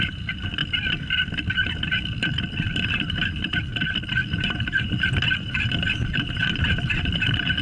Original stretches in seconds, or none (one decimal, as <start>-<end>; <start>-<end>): 0.6-2.9; 3.7-4.3